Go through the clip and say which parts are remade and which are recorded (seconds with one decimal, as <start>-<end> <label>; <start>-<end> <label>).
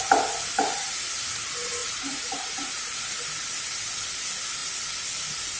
0.0-1.8 recorded; 1.8-3.0 remade; 3.0-5.6 recorded